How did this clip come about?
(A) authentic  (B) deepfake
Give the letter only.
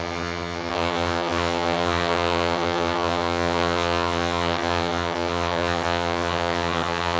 B